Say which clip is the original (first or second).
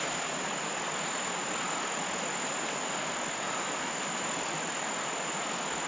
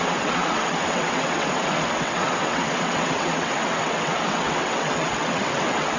first